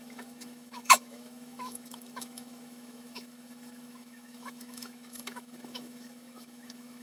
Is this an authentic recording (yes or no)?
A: no